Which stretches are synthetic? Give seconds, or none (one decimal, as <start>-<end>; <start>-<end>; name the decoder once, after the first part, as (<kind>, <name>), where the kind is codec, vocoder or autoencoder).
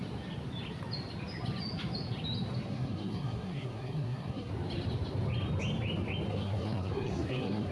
2.7-4.5 (codec, SNAC); 6.3-7.7